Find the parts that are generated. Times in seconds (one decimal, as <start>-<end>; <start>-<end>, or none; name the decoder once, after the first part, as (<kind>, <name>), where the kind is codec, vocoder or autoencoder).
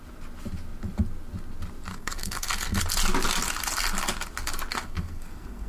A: 1.9-2.8 (codec, SNAC); 4.7-5.7